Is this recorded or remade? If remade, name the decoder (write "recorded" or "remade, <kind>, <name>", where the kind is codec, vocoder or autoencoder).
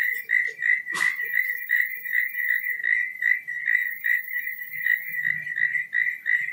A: recorded